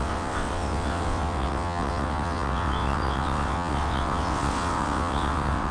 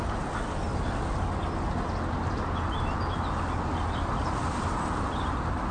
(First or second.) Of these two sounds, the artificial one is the first